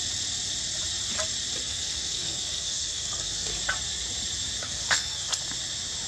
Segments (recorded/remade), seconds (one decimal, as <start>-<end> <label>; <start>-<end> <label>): 0.0-1.6 recorded; 1.6-3.5 remade; 3.5-4.6 recorded; 4.6-5.4 remade; 5.4-6.1 recorded

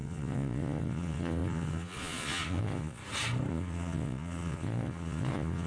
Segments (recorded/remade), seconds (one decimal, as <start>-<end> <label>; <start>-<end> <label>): 0.0-3.0 remade; 3.0-3.5 recorded; 3.5-5.7 remade

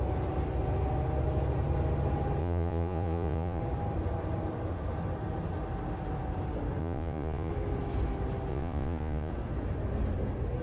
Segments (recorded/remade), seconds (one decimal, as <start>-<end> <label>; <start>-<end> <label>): 0.0-2.4 recorded; 2.4-3.6 remade; 3.6-6.8 recorded; 6.8-7.5 remade; 7.5-8.5 recorded; 8.5-9.3 remade; 9.3-10.6 recorded

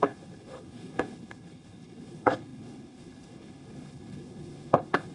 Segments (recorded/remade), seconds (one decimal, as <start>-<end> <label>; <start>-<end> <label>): 0.0-5.1 remade